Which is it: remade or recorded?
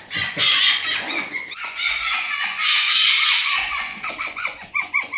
remade